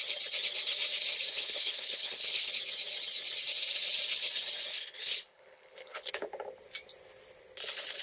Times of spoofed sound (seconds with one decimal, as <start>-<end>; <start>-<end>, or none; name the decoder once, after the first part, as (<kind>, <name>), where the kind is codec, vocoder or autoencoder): 1.3-2.5 (codec, HILCodec); 4.7-6.1